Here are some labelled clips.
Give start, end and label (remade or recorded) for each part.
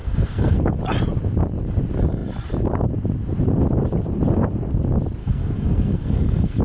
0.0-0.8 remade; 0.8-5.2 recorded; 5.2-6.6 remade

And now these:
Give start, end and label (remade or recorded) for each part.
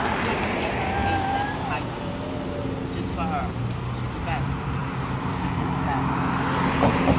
0.0-4.8 recorded; 4.8-5.6 remade; 5.6-7.2 recorded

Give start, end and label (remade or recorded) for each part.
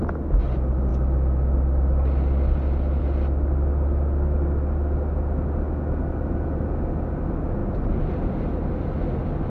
0.0-9.5 recorded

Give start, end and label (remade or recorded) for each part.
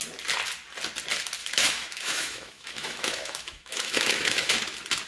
0.0-1.4 recorded; 1.4-4.5 remade; 4.5-5.1 recorded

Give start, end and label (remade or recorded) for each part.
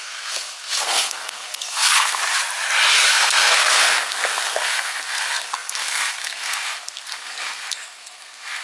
0.0-2.2 remade; 2.2-3.1 recorded; 3.1-8.6 remade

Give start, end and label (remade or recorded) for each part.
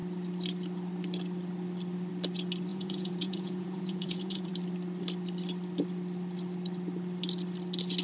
0.0-2.7 recorded; 2.7-4.5 remade; 4.5-8.0 recorded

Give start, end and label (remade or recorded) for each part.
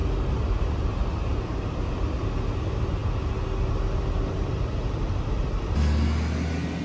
0.0-6.8 recorded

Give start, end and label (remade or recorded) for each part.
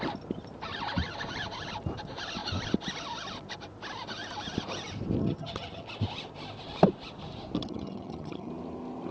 0.0-5.2 recorded; 5.2-5.9 remade; 5.9-7.6 recorded; 7.6-8.5 remade; 8.5-9.1 recorded